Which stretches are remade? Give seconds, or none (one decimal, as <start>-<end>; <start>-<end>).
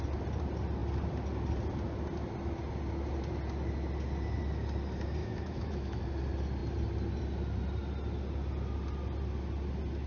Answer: 5.2-6.0